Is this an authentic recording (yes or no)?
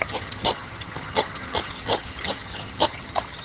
no